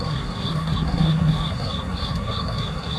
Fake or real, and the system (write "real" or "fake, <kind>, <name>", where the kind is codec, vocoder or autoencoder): fake, codec, SNAC